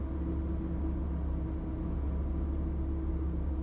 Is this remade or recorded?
recorded